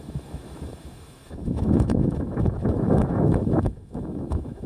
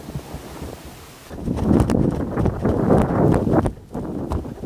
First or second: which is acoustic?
second